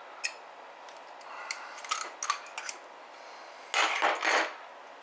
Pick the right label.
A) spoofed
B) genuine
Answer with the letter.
B